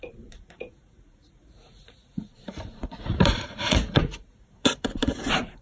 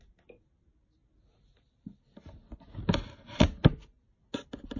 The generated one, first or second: first